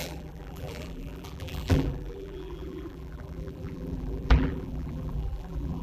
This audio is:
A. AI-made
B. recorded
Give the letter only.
A